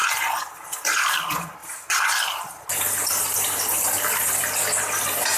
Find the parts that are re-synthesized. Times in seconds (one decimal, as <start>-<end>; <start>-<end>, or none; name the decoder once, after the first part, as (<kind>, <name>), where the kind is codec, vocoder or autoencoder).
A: none